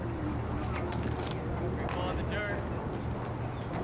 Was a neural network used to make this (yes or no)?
no